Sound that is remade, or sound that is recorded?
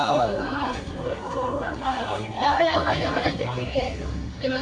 remade